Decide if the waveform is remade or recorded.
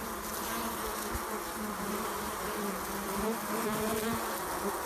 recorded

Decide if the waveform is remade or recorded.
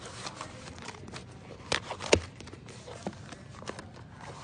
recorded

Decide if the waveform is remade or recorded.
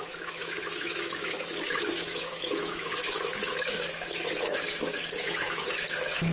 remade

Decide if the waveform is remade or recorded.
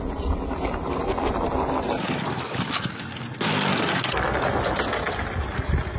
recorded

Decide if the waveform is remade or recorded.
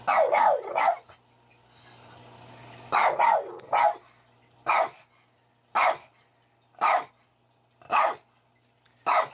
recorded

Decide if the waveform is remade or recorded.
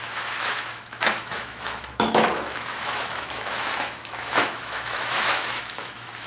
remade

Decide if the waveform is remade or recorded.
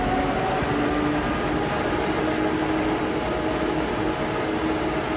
recorded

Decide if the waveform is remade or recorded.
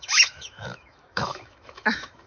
remade